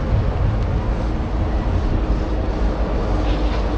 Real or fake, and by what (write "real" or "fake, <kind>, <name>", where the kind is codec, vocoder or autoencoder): real